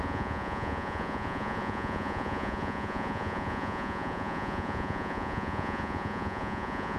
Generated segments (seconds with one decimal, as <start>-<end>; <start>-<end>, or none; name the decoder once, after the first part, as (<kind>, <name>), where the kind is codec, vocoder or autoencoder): 0.0-7.0 (vocoder, Vocos)